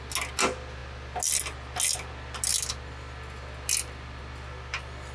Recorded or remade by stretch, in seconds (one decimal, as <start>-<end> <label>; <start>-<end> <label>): 0.0-5.1 recorded